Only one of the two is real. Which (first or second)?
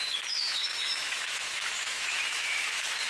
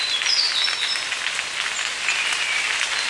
second